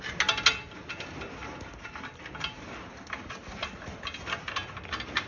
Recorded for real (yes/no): yes